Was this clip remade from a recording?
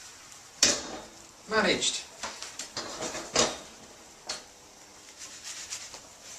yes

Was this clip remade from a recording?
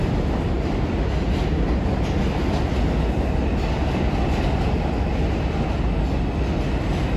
no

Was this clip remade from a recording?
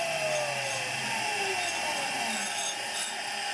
no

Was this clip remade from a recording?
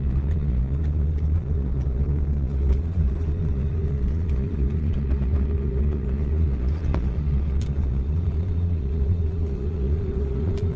yes